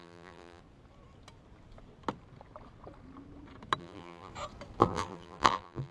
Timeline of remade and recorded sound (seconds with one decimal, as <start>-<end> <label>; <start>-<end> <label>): 0.0-0.6 remade; 0.6-3.8 recorded; 3.8-4.3 remade; 4.3-4.8 recorded; 4.8-5.9 remade